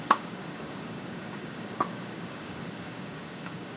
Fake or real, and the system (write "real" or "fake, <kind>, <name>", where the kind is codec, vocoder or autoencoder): fake, codec, DAC